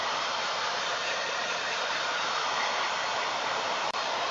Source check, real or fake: fake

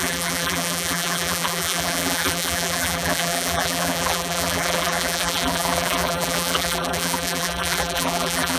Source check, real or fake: fake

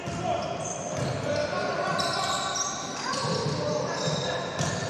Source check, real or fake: real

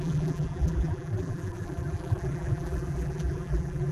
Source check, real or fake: fake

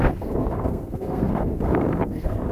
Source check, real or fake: fake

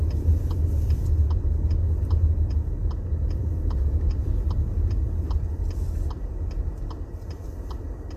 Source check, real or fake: real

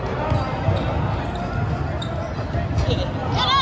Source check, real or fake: real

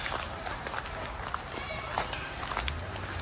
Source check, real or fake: real